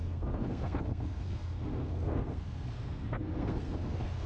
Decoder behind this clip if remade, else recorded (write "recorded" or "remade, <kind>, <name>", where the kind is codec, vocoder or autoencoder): remade, codec, SNAC